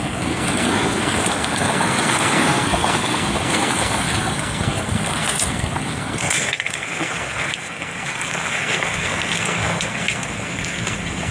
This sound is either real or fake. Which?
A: fake